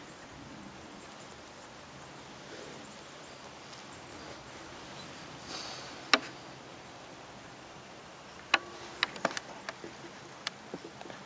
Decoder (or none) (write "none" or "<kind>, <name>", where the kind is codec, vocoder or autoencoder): none